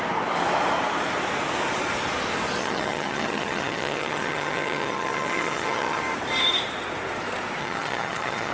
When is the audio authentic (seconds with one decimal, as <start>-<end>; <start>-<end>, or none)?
0.0-2.6; 6.0-7.6